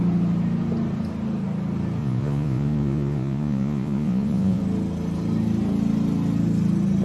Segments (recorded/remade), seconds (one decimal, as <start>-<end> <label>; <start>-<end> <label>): 0.0-2.0 recorded; 2.0-4.6 remade; 4.6-7.0 recorded

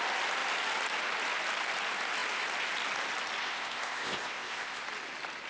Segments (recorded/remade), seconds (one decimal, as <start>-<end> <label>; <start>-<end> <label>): 0.0-3.4 recorded; 3.4-4.8 remade; 4.8-5.5 recorded

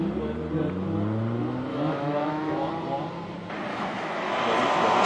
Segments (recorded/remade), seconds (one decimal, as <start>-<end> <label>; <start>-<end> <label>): 0.0-1.7 recorded; 1.7-2.7 remade; 2.7-3.7 recorded; 3.7-4.3 remade; 4.3-5.1 recorded

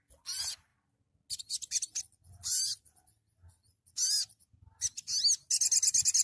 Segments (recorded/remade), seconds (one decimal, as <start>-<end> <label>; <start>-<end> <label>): 0.0-6.2 recorded

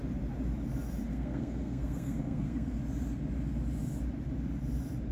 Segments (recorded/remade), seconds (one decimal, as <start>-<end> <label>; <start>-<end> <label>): 0.0-1.1 recorded; 1.1-2.8 remade; 2.8-5.1 recorded